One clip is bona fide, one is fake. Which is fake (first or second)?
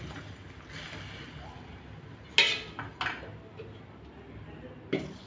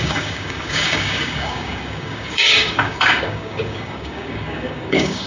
second